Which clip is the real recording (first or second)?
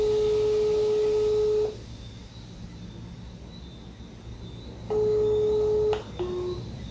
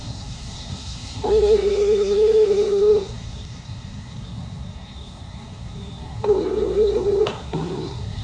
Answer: first